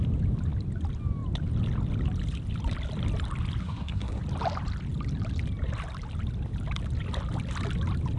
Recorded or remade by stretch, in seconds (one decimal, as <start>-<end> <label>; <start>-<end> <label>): 0.0-3.6 recorded; 3.6-4.2 remade; 4.2-8.2 recorded